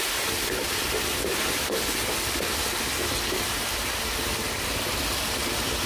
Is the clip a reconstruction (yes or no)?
no